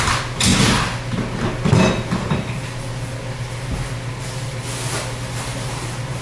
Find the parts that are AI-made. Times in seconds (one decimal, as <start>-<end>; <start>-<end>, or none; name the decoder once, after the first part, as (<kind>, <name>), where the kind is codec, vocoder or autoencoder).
none